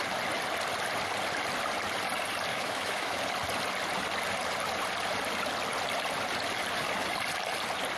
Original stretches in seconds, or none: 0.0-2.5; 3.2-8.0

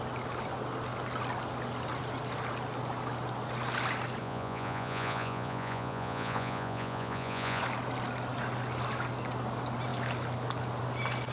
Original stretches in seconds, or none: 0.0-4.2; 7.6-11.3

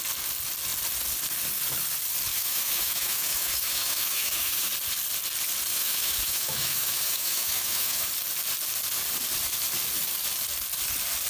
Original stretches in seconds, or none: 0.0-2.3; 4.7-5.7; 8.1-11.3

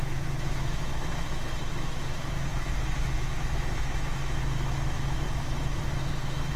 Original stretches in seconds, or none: none

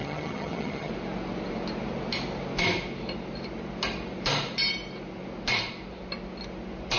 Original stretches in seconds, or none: 0.9-7.0

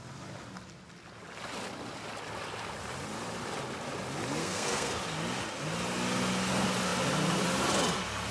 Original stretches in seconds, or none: 0.0-4.4; 5.0-8.3